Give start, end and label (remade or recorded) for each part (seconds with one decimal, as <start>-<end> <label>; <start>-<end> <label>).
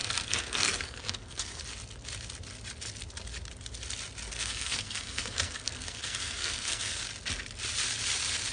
0.0-1.6 remade; 1.6-4.3 recorded; 4.3-7.0 remade; 7.0-8.5 recorded